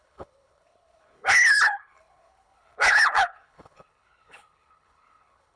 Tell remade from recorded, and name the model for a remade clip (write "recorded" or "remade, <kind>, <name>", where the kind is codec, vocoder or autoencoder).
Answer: remade, codec, HILCodec